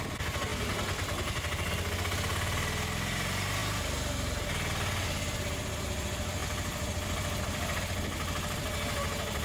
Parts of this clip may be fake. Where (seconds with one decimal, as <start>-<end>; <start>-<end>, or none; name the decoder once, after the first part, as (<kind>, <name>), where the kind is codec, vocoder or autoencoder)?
6.4-7.8 (vocoder, BigVGAN v2)